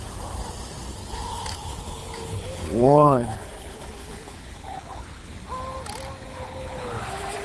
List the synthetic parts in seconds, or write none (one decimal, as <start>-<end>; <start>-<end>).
0.9-5.3; 6.3-7.0

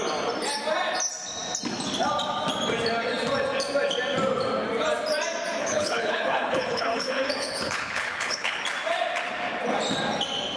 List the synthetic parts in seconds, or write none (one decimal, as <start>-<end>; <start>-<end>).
5.6-8.6

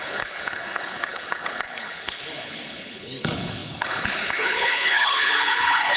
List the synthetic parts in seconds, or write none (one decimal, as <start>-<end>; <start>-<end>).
0.0-6.0